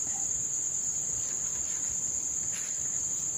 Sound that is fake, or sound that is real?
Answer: real